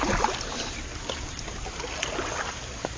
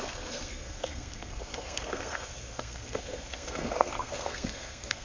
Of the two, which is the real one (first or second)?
first